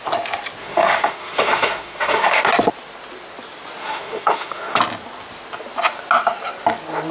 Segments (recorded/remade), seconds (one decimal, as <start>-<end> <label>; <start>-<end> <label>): 0.0-0.6 recorded; 0.6-2.4 remade; 2.4-3.8 recorded; 3.8-4.8 remade; 4.8-7.1 recorded